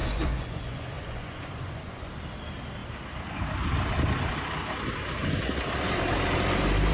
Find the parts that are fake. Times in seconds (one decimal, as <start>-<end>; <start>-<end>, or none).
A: 0.0-2.1